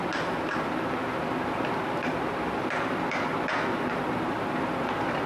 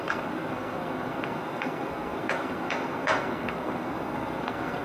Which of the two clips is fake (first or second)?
second